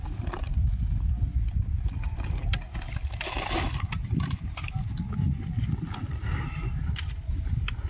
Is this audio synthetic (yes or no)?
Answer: no